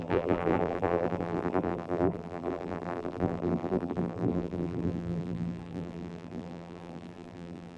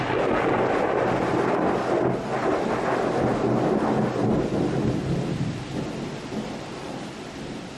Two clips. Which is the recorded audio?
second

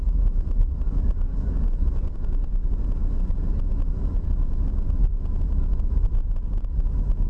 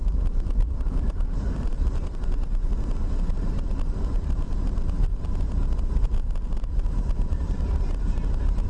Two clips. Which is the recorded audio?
first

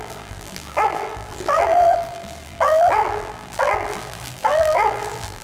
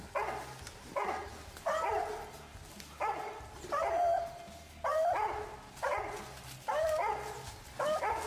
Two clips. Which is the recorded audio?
second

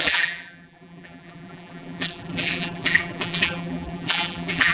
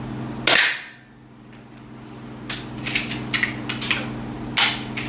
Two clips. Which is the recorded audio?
second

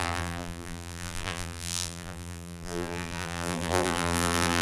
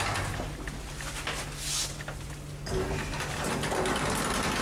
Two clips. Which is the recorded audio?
second